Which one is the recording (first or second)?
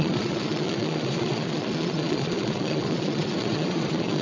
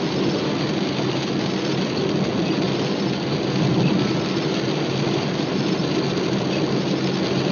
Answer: second